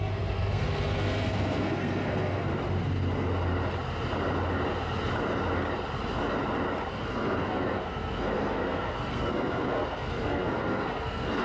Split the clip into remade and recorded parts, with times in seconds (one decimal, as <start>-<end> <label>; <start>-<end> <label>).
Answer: 0.0-2.5 remade; 2.5-6.9 recorded; 6.9-11.4 remade